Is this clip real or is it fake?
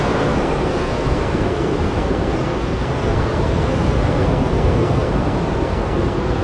fake